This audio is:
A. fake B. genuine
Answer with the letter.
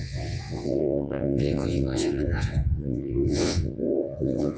A